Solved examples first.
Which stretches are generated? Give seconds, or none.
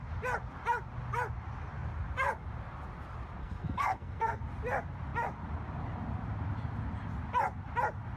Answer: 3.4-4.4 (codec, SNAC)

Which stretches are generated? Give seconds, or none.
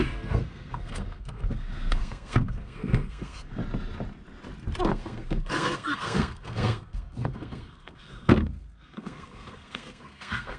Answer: 0.0-3.6 (codec, SNAC); 4.9-10.6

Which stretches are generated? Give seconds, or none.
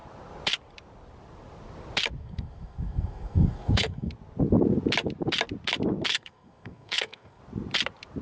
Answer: 2.2-4.1 (codec, SNAC); 6.1-7.4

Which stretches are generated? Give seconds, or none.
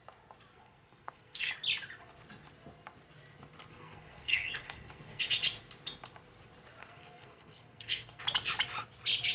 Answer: 0.5-1.5 (codec, SNAC); 3.7-5.2; 6.8-8.2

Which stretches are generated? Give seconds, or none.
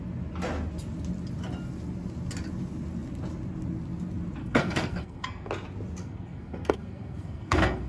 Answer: 4.4-5.5 (codec, SNAC); 6.0-7.9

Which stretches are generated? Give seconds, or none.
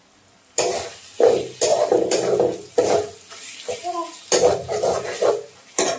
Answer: none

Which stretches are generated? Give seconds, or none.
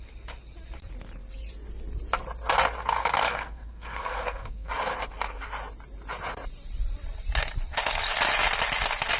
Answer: 3.0-4.7 (codec, SNAC)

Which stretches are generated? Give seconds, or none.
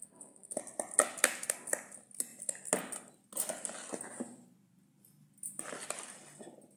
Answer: 0.0-0.6 (codec, SNAC)